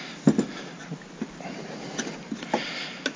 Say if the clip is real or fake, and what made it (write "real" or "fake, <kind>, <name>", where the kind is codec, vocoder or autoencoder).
real